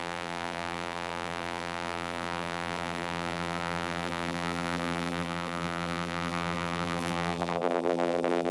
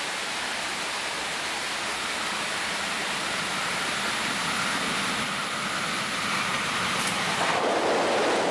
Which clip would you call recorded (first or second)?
second